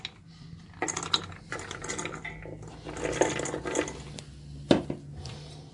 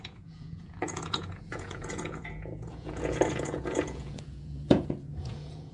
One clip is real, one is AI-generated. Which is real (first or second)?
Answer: first